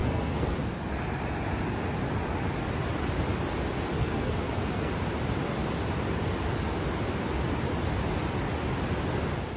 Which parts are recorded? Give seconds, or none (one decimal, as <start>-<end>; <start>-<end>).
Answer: 0.5-4.0; 4.9-9.6